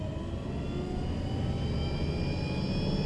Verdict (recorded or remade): recorded